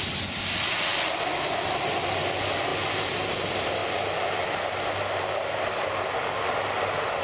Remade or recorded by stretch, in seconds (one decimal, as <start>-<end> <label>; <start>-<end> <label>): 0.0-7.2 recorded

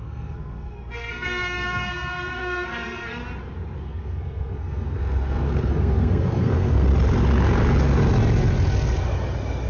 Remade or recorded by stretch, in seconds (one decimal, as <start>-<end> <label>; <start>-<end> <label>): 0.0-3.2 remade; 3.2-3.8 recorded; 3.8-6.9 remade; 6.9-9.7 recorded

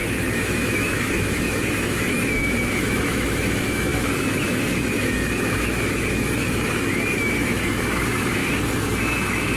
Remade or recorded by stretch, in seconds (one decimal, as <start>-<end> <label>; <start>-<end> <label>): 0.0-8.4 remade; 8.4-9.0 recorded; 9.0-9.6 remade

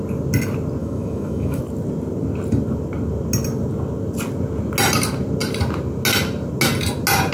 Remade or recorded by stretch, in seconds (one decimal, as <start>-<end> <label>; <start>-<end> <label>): 0.0-0.8 recorded; 0.8-1.6 remade; 1.6-7.3 recorded

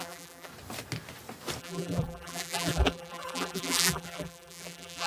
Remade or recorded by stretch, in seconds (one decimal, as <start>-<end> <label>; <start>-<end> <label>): 0.0-0.5 remade; 0.5-1.6 recorded; 1.6-5.1 remade